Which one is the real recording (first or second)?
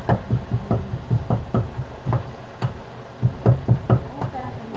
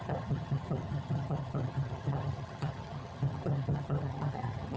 first